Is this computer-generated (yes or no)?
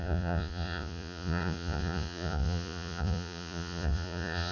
yes